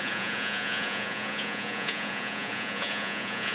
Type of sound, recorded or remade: remade